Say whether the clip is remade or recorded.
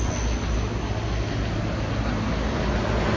recorded